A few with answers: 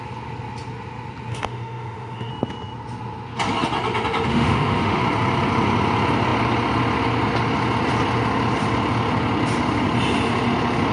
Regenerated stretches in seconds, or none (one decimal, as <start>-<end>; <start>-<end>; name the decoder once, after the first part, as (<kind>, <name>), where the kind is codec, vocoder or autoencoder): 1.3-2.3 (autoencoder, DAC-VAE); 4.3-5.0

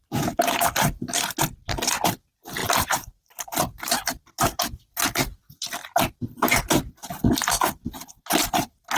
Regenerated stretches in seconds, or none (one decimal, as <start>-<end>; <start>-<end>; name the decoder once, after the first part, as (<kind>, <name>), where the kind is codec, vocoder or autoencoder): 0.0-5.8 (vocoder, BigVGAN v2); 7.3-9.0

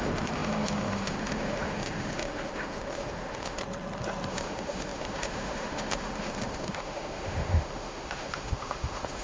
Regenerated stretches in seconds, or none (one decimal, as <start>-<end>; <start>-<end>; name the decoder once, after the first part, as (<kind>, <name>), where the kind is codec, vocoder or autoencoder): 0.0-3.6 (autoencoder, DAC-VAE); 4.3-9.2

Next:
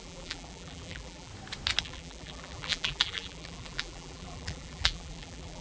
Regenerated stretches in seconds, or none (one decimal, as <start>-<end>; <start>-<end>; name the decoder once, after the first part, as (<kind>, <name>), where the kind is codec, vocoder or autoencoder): 0.0-1.3 (vocoder, BigVGAN v2); 1.8-5.6